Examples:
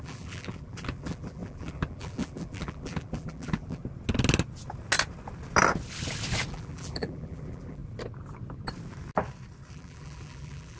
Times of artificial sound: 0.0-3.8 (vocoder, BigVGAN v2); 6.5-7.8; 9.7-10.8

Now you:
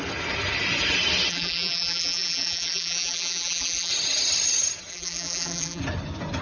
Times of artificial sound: 1.3-3.9 (vocoder, BigVGAN v2); 4.9-5.8

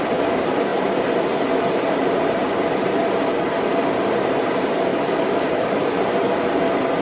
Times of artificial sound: 0.7-2.4 (vocoder, BigVGAN v2); 4.9-5.8

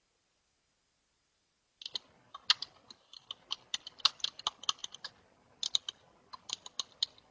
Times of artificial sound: none

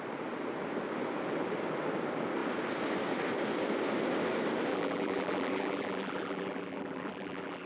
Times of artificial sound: 4.7-7.7 (vocoder, BigVGAN v2)

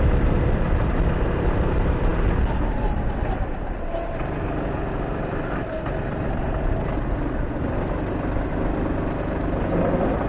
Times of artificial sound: none

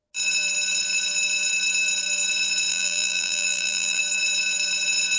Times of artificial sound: 2.7-4.0 (vocoder, BigVGAN v2)